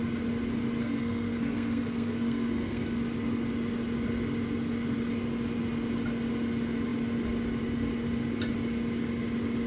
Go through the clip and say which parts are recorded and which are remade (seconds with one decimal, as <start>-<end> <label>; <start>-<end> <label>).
0.0-0.8 recorded; 0.8-3.0 remade; 3.0-9.7 recorded